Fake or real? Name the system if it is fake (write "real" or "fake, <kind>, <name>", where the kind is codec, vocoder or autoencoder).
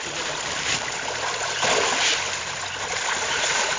real